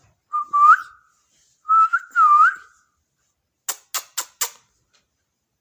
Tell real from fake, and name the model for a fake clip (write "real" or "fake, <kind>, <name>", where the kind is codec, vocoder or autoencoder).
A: real